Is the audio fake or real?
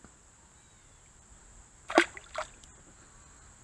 real